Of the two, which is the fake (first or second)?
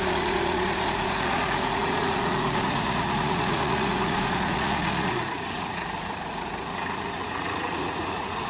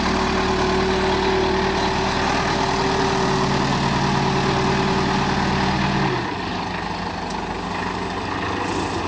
first